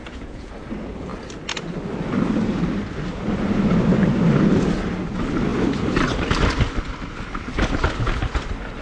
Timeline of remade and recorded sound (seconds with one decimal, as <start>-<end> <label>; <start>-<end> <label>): 0.0-0.5 remade; 0.5-8.8 recorded

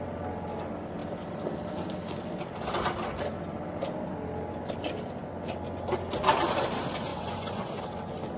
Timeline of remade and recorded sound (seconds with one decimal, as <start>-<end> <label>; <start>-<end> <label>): 0.0-7.1 recorded; 7.1-7.8 remade; 7.8-8.4 recorded